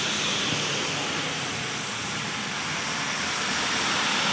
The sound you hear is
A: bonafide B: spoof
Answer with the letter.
A